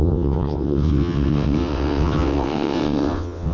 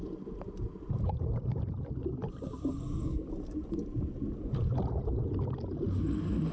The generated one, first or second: first